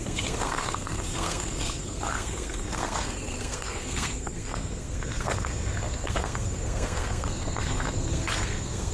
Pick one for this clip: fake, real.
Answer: fake